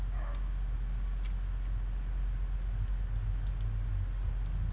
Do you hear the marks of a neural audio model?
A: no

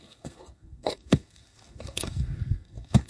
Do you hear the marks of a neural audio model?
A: yes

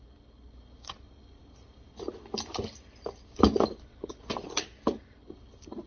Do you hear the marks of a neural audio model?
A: no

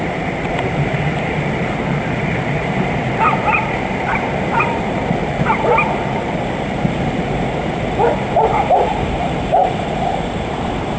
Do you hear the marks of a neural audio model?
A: yes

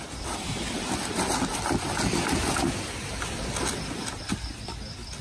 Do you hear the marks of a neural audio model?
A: no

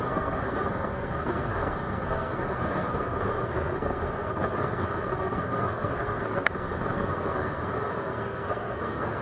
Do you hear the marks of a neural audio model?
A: yes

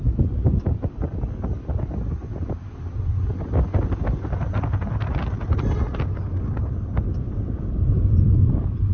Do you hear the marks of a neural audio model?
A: no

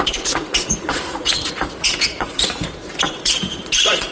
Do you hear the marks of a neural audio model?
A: yes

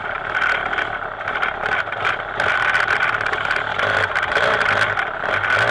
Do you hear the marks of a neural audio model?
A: no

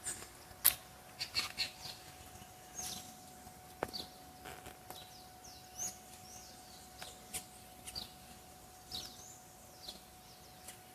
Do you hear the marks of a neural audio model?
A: no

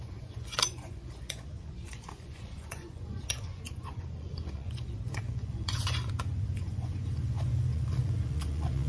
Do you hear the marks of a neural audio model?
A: yes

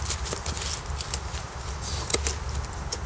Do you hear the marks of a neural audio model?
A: no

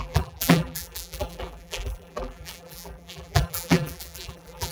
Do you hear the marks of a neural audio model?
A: yes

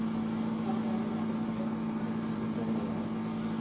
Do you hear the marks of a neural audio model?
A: no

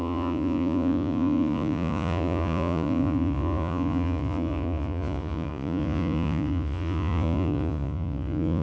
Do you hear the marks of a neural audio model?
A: yes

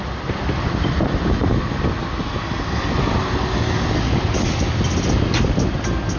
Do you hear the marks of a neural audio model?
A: no